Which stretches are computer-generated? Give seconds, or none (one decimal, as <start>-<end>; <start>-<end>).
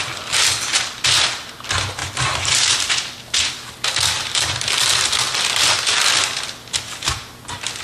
none